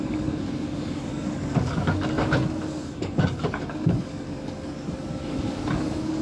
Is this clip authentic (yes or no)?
no